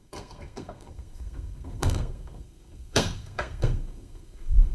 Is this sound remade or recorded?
remade